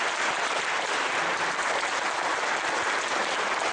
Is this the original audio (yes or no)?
yes